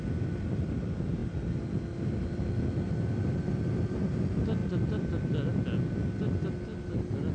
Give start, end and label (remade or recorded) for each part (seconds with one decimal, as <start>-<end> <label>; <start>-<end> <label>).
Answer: 0.0-7.3 recorded